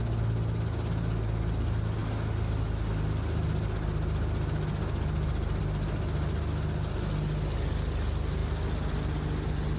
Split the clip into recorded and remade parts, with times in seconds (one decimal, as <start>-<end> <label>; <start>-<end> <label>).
0.0-9.8 recorded